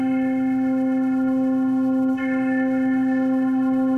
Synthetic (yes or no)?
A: yes